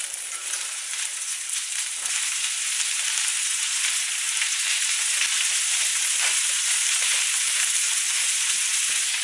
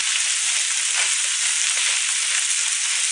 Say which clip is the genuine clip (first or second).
second